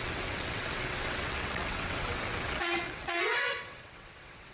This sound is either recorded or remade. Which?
remade